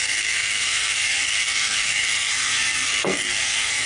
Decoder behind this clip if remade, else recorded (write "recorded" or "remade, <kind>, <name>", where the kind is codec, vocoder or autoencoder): remade, codec, SNAC